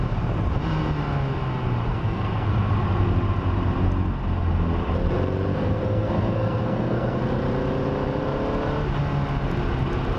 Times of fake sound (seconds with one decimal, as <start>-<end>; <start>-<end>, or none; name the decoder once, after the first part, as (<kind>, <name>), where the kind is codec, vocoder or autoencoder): 1.9-2.7 (codec, SNAC); 5.5-7.2